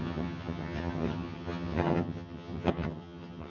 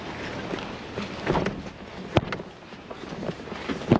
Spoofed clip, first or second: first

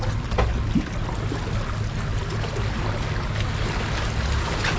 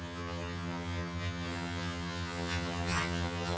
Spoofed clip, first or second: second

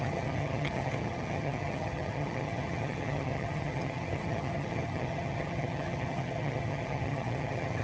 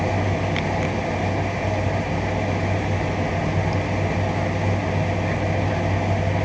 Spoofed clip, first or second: first